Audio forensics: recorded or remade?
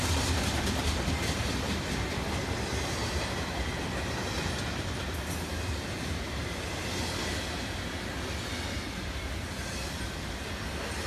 recorded